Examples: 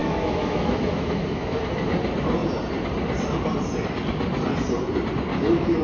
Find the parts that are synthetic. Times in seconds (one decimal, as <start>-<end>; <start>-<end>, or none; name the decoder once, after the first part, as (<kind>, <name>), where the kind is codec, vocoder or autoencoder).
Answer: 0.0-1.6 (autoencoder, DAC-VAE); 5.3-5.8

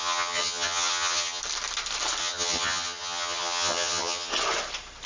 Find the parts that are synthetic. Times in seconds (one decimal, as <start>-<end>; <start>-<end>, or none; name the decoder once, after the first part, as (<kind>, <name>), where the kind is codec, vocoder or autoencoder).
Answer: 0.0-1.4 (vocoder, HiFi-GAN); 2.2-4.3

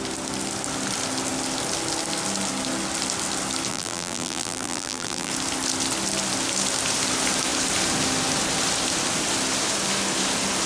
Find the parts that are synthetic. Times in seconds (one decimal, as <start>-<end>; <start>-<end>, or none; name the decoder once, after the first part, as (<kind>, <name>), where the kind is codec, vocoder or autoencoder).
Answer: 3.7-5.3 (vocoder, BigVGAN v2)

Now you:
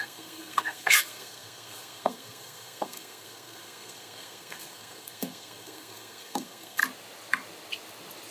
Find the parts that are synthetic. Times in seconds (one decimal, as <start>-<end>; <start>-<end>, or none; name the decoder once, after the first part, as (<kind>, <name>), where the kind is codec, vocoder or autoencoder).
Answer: 0.0-6.8 (codec, SNAC)

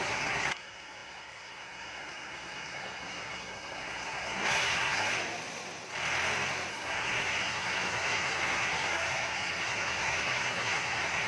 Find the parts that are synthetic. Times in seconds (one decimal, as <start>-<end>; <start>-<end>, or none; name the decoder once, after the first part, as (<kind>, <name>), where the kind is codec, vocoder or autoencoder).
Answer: 0.0-5.1 (codec, SNAC); 6.7-11.3

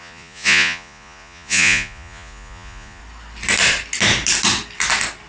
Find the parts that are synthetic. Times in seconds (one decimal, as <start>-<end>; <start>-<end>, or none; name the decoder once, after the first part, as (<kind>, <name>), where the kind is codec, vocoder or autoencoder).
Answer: 0.0-3.0 (vocoder, Vocos)

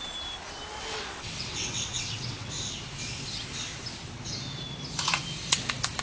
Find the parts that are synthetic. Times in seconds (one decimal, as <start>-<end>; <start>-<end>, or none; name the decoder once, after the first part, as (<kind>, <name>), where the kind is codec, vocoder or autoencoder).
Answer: 0.7-2.5 (vocoder, WaveNeXt)

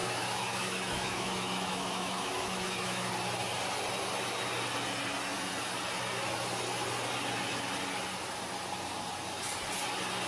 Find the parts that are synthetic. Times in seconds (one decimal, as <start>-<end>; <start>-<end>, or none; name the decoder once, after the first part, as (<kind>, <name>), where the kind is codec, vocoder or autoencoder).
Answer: 0.0-3.1 (autoencoder, DAC-VAE)